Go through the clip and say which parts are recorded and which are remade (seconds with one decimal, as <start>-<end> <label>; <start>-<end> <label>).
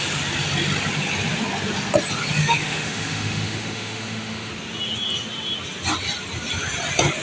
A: 0.0-2.4 recorded; 2.4-4.5 remade; 4.5-7.2 recorded